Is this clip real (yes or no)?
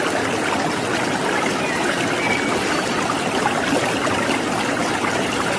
yes